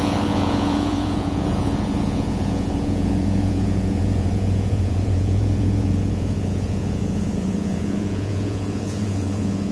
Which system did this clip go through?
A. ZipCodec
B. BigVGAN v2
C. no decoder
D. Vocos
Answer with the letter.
D